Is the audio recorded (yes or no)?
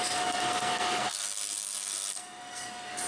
no